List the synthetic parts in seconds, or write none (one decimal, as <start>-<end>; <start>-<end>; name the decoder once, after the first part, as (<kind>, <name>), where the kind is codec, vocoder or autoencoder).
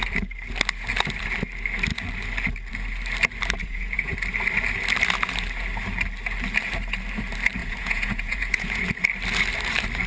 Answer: 3.6-4.1 (vocoder, Vocos); 7.6-8.8